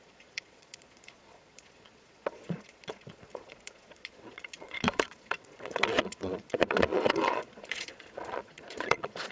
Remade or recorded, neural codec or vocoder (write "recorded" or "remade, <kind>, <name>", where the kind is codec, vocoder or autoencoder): remade, vocoder, Vocos